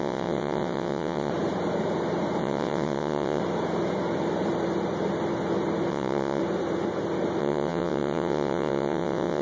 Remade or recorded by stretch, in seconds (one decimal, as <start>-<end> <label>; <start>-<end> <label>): 0.0-1.3 remade; 1.3-2.4 recorded; 2.4-3.4 remade; 3.4-5.9 recorded; 5.9-6.4 remade; 6.4-7.4 recorded; 7.4-9.4 remade